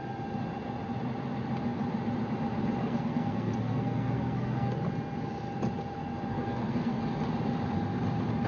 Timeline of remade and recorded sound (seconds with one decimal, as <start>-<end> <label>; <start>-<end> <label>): 0.0-2.8 recorded; 2.8-4.7 remade; 4.7-6.3 recorded; 6.3-7.0 remade; 7.0-8.5 recorded